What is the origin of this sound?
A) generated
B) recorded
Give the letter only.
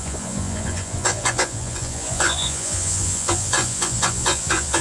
A